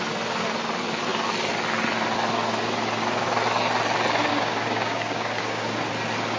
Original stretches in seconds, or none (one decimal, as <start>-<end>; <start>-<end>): 0.0-4.3; 5.8-6.4